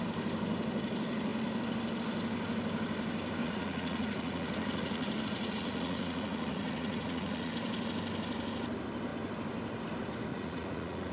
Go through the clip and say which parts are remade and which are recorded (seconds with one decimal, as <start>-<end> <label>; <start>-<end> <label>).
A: 0.0-3.4 recorded; 3.4-7.5 remade; 7.5-10.3 recorded; 10.3-11.1 remade